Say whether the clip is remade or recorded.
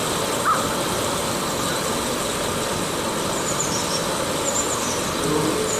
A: recorded